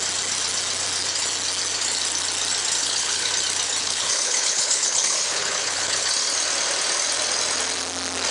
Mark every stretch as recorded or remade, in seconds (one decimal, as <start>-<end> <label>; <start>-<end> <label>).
0.0-2.8 recorded; 2.8-3.3 remade; 3.3-3.8 recorded; 3.8-6.1 remade; 6.1-8.3 recorded